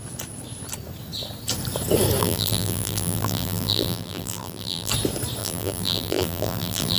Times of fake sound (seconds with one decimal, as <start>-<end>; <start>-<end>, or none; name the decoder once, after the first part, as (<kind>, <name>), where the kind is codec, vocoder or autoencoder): 2.2-4.9 (vocoder, BigVGAN v2); 5.4-7.0